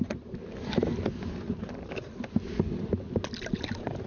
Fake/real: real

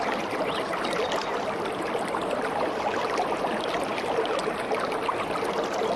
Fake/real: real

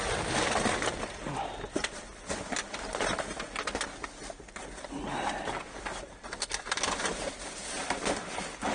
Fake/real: real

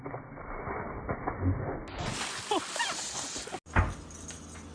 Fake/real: real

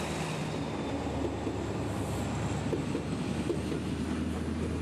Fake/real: real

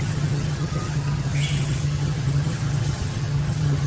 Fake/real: fake